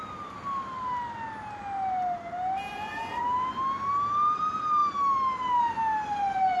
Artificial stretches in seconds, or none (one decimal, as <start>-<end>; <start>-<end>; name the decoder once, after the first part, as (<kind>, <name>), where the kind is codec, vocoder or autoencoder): 2.7-3.2 (vocoder, Vocos)